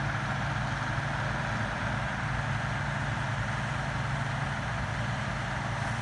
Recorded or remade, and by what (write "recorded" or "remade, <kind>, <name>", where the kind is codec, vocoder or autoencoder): recorded